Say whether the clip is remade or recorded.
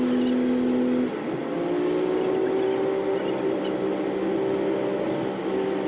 recorded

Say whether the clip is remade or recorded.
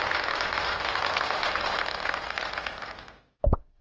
recorded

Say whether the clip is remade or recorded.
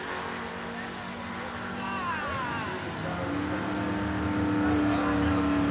recorded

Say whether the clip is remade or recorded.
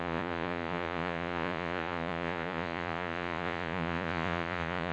remade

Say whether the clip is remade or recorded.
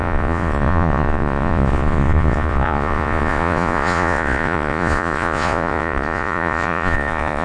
remade